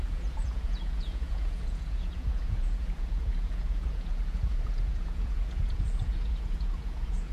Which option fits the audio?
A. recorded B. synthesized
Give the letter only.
B